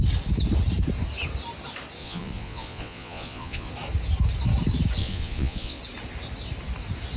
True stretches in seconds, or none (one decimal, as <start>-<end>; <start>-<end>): 0.0-2.0; 3.7-5.0; 5.8-7.2